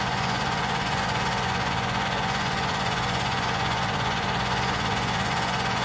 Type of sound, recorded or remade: remade